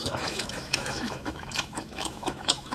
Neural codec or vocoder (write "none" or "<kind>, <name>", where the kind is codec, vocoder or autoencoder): autoencoder, DAC-VAE